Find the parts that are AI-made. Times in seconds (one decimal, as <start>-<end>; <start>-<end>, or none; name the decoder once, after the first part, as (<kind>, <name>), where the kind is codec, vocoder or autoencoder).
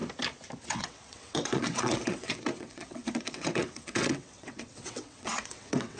0.6-6.0 (vocoder, WaveNeXt)